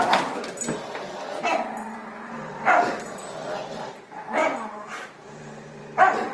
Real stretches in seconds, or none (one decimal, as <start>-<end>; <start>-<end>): 0.0-2.0; 3.4-6.3